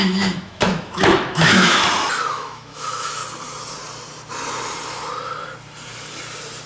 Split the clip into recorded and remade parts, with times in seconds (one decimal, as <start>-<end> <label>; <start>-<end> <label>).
0.0-1.8 remade; 1.8-2.3 recorded; 2.3-3.2 remade; 3.2-6.7 recorded